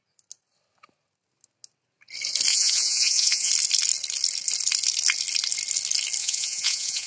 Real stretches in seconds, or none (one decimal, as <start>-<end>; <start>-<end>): 0.0-2.5; 3.5-6.2